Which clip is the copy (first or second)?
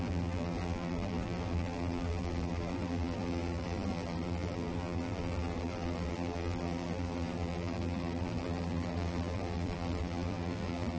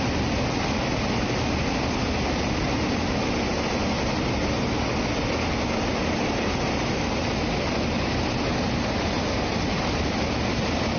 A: first